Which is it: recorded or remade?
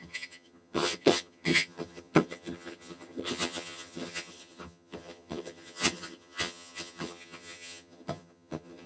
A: remade